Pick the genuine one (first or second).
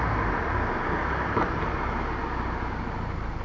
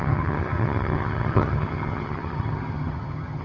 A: first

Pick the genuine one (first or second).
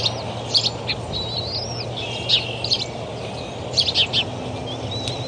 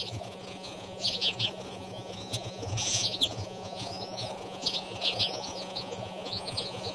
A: first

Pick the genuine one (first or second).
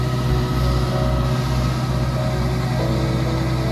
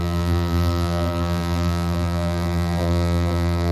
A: first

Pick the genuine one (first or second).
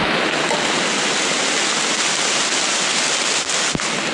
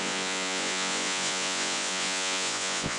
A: first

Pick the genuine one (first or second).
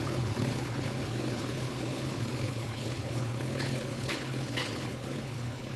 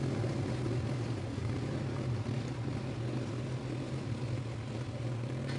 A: second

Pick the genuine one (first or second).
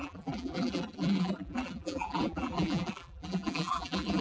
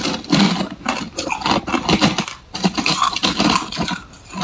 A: second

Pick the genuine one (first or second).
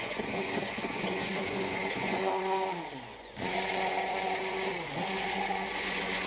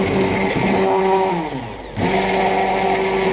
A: second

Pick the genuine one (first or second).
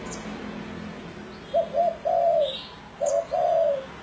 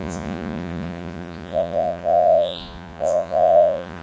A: first